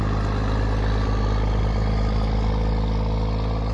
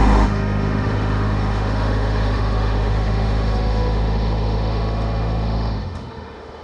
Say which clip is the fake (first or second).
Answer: second